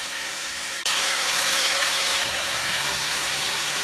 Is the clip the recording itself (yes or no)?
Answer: no